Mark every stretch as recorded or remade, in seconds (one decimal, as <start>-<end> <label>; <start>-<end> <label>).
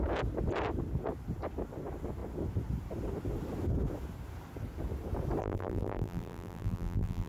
0.0-5.4 recorded; 5.4-7.3 remade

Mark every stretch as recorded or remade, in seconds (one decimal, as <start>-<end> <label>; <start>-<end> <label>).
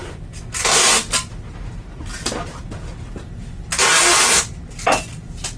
0.0-5.6 recorded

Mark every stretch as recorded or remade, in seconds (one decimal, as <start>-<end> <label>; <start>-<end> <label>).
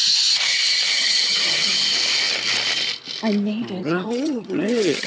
0.0-0.9 recorded; 0.9-1.7 remade; 1.7-3.8 recorded; 3.8-5.1 remade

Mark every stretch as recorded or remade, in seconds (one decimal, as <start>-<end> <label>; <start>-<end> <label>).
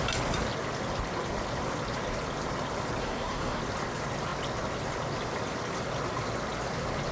0.0-3.0 recorded; 3.0-3.6 remade; 3.6-7.1 recorded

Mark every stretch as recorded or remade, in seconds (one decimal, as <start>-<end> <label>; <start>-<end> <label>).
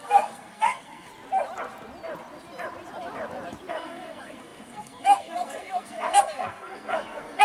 0.0-1.1 remade; 1.1-3.7 recorded; 3.7-7.4 remade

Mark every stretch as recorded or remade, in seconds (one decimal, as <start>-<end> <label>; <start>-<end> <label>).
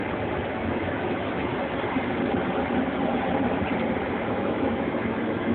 0.0-0.5 recorded; 0.5-1.5 remade; 1.5-4.3 recorded; 4.3-5.5 remade